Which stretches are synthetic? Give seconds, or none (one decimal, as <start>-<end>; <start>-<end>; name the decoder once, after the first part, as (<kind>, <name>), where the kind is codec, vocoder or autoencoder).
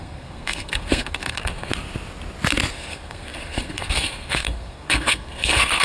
0.0-1.7 (codec, SNAC); 2.7-5.8